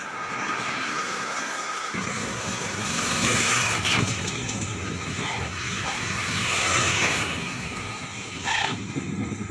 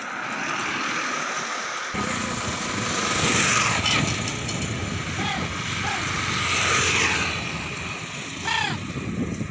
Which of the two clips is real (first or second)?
second